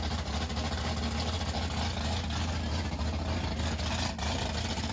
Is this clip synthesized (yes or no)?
no